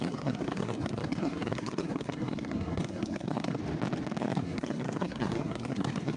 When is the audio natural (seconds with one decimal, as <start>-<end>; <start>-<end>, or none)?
3.6-4.2